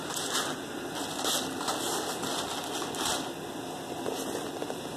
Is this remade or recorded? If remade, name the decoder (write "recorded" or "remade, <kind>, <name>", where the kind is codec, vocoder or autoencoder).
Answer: recorded